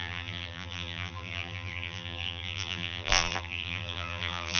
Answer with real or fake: fake